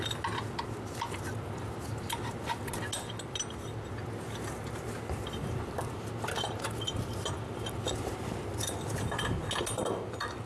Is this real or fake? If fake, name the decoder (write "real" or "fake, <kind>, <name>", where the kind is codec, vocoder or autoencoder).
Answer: real